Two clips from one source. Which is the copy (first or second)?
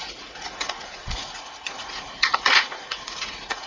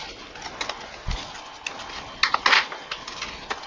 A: first